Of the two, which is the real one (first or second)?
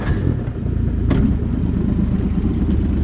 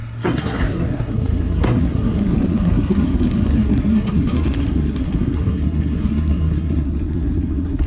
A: first